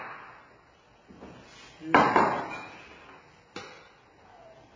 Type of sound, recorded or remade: recorded